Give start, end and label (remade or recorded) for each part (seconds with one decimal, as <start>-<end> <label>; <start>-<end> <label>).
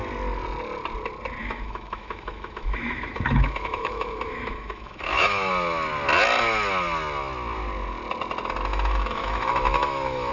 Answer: 0.0-1.4 recorded; 1.4-5.5 remade; 5.5-8.7 recorded; 8.7-10.3 remade